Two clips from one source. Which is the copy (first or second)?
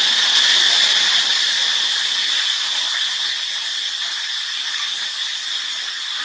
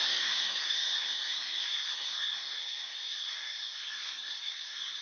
second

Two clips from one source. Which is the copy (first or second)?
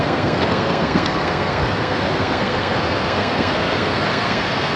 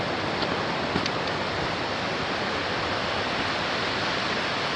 first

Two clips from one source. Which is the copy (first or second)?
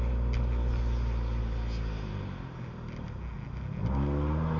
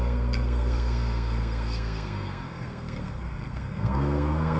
second